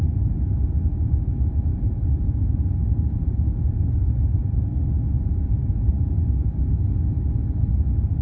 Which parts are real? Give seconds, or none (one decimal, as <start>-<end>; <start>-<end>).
0.0-1.7; 6.1-8.2